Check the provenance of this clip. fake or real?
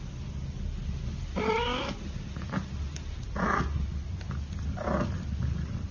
real